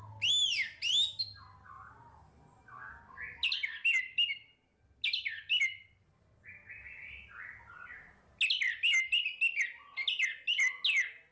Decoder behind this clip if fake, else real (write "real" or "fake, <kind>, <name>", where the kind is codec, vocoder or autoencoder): real